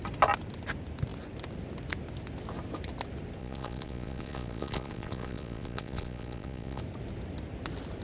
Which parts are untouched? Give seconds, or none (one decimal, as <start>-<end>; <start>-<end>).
0.0-3.4; 6.8-8.0